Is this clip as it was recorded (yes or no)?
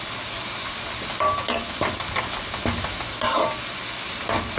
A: yes